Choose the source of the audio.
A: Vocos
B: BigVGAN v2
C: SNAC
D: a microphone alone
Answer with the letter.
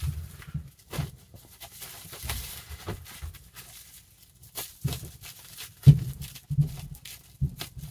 B